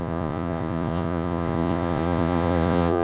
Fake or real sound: fake